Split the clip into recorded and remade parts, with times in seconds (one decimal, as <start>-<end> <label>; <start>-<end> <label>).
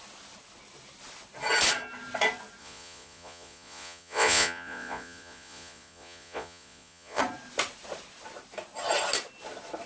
0.0-2.6 recorded; 2.6-7.2 remade; 7.2-9.9 recorded